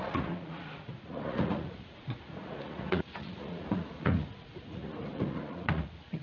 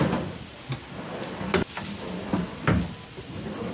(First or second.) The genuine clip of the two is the second